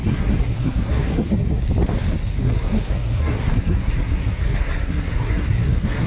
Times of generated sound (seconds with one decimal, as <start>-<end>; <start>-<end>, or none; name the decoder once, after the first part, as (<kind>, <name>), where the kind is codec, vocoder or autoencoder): 0.0-1.6 (codec, SNAC); 2.3-6.1